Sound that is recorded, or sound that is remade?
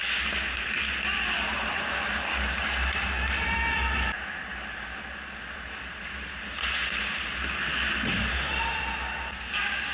recorded